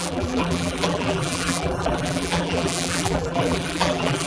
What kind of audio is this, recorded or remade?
remade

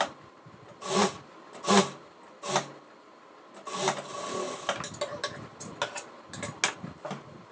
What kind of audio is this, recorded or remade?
recorded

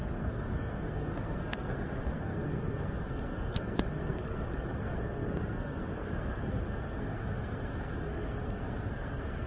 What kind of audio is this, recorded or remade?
remade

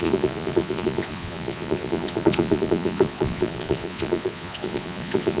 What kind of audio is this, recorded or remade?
remade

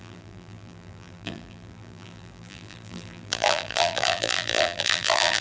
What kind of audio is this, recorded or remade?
remade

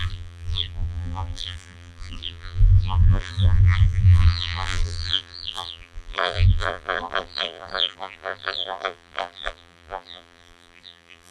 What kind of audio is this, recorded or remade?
remade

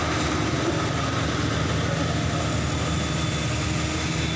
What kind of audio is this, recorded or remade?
recorded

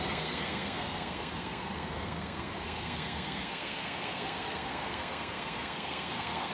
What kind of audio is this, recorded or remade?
remade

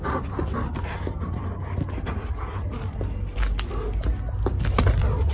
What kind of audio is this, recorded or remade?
recorded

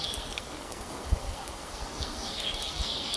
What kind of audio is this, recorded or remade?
remade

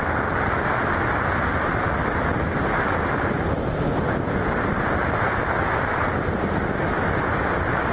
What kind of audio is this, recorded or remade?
recorded